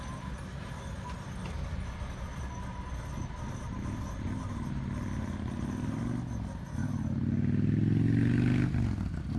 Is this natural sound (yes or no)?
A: yes